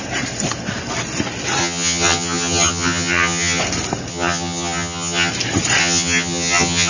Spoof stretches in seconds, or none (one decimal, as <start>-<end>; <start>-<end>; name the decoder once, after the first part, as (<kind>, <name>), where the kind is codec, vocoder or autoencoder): 1.6-3.6 (vocoder, HiFi-GAN); 4.1-5.3; 5.8-6.9

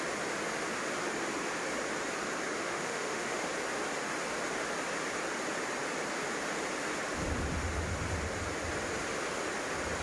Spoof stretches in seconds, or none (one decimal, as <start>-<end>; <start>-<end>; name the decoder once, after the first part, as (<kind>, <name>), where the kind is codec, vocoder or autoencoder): 2.6-3.5 (autoencoder, DAC-VAE)

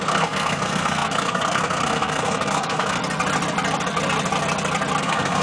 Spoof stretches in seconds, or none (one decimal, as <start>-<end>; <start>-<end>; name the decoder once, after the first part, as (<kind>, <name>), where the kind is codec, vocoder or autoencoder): 0.0-3.0 (codec, SNAC); 5.0-5.4

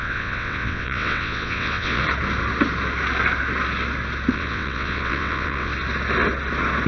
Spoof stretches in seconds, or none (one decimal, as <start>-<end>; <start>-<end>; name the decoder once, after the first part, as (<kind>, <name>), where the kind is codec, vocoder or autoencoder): 0.0-2.0 (vocoder, WaveNeXt); 4.3-5.7

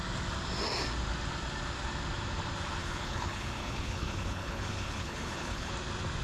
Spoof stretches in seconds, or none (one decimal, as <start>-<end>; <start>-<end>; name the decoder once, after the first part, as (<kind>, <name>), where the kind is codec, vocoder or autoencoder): 2.8-5.7 (codec, HILCodec)

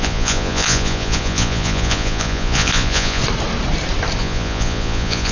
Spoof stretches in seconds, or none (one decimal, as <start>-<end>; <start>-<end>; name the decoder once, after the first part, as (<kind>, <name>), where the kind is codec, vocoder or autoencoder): 0.0-3.2 (vocoder, Vocos); 4.2-5.3